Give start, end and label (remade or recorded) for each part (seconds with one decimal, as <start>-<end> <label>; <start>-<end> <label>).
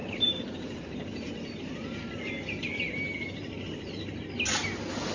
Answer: 0.0-1.3 remade; 1.3-5.1 recorded